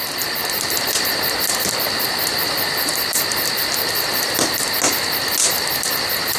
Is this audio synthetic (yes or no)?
no